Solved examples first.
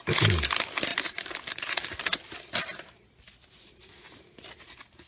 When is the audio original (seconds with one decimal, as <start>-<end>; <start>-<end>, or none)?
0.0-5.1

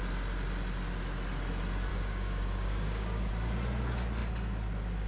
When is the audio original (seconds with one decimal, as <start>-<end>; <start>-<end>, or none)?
0.0-1.9; 3.3-5.1

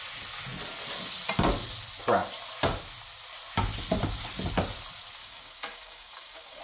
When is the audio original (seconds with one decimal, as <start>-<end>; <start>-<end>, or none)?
0.0-5.2

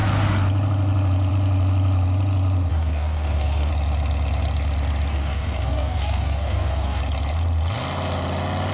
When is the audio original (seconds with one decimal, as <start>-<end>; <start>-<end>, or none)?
0.0-2.7; 3.7-5.1; 7.0-8.7